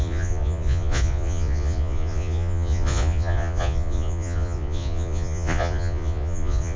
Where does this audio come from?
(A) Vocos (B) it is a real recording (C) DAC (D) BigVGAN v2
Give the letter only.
A